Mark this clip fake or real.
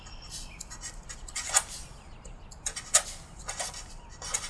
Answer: fake